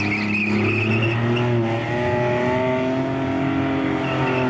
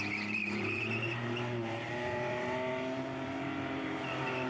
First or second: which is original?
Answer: first